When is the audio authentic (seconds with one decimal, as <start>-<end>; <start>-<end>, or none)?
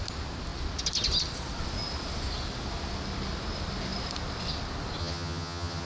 0.0-5.0